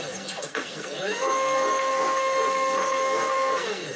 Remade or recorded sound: remade